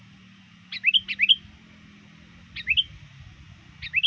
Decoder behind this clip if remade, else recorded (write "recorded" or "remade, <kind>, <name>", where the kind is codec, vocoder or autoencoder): recorded